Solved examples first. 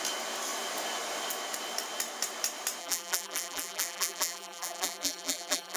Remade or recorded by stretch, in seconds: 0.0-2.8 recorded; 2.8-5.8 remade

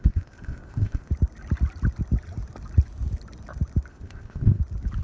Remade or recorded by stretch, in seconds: 0.0-1.1 remade; 1.1-3.9 recorded; 3.9-4.6 remade; 4.6-5.0 recorded